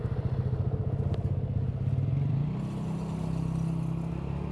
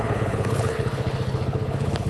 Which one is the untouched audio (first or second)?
first